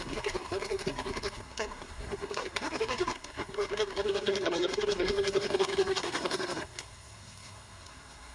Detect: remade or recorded remade